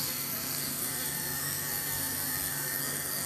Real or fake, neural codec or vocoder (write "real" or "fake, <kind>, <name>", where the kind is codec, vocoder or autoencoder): fake, codec, SNAC